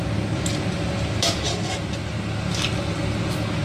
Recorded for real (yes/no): yes